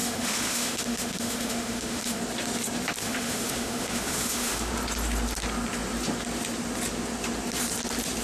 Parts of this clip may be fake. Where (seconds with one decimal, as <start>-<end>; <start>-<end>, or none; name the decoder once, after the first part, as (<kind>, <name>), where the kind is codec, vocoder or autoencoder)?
0.0-2.2 (autoencoder, DAC-VAE); 3.0-4.7